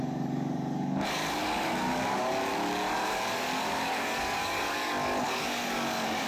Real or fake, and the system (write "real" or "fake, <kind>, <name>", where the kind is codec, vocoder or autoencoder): fake, codec, DAC